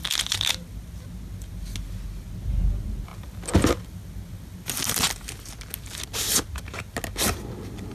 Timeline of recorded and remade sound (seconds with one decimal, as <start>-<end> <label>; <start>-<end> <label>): 0.0-7.9 recorded